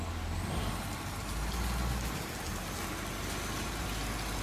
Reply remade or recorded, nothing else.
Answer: recorded